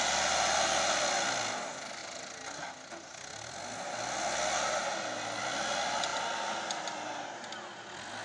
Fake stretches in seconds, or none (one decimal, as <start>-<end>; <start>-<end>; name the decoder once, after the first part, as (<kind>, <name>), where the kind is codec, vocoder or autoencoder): none

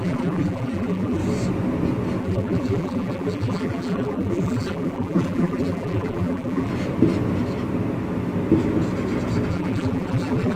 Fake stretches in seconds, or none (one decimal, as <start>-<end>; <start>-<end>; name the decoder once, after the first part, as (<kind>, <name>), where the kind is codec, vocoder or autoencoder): 0.0-1.2 (vocoder, BigVGAN v2); 2.2-6.7; 9.5-10.6

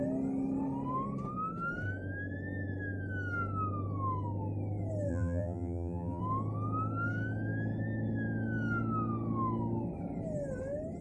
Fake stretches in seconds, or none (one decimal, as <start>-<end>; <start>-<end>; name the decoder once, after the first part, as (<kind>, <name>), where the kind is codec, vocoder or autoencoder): 5.1-6.2 (vocoder, BigVGAN v2)

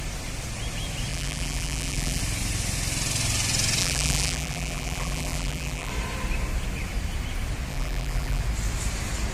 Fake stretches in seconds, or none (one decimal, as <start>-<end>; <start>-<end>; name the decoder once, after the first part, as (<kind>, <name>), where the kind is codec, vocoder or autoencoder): 1.1-2.2 (vocoder, BigVGAN v2); 3.8-5.9; 7.7-8.4